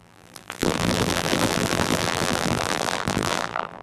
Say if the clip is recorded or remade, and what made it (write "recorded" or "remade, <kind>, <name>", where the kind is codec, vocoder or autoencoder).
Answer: remade, vocoder, BigVGAN v2